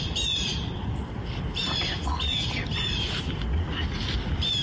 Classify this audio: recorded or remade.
recorded